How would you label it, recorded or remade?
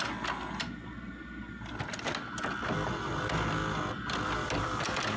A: recorded